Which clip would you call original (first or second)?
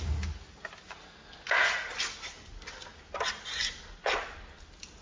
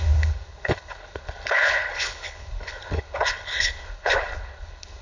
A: first